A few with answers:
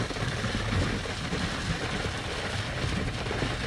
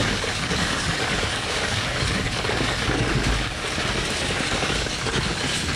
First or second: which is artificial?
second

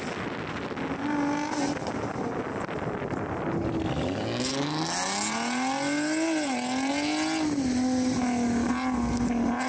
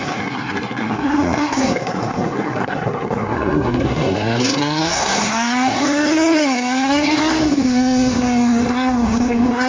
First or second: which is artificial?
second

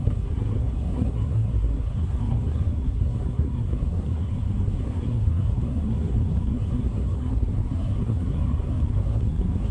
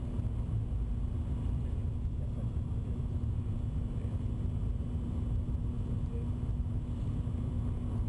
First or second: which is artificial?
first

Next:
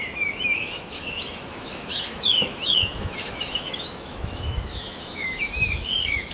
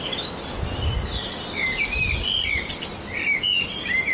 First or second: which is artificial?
first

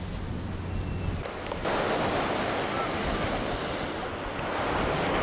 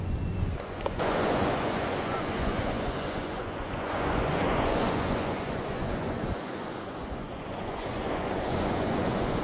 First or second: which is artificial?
second